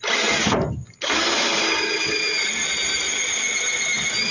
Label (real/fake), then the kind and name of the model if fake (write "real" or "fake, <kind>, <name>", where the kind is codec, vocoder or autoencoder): real